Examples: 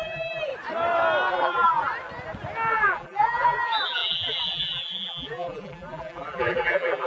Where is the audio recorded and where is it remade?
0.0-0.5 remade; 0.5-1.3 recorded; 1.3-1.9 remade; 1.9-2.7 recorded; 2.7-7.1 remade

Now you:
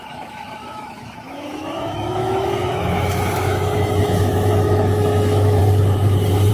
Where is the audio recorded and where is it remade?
0.0-5.6 remade; 5.6-6.5 recorded

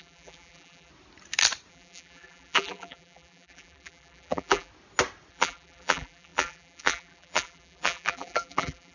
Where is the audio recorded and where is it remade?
0.0-0.9 remade; 0.9-1.7 recorded; 1.7-4.7 remade; 4.7-5.3 recorded; 5.3-8.9 remade

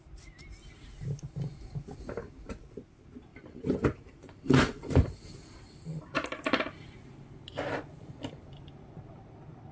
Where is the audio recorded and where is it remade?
0.0-3.3 recorded; 3.3-6.0 remade; 6.0-9.7 recorded

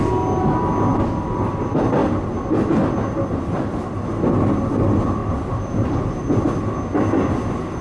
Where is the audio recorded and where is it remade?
0.0-5.2 recorded; 5.2-6.4 remade; 6.4-7.8 recorded

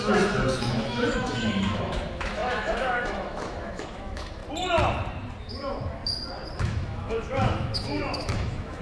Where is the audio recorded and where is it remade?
0.0-4.4 remade; 4.4-5.4 recorded; 5.4-6.0 remade; 6.0-6.6 recorded; 6.6-8.8 remade